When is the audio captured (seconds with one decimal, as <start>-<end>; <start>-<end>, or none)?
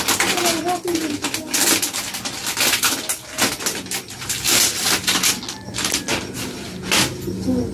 0.0-7.7